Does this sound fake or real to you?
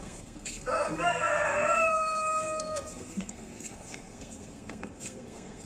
fake